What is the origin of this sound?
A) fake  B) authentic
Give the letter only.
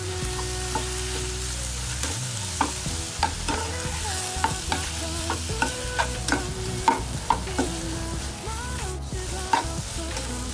B